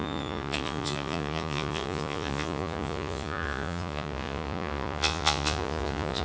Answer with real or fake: fake